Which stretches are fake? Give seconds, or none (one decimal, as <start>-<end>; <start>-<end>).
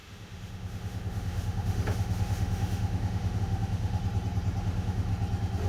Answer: 0.0-4.0; 4.6-5.1